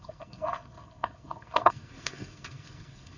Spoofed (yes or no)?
yes